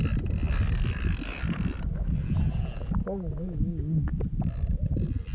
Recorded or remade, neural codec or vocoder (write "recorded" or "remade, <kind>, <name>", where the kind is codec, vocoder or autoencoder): recorded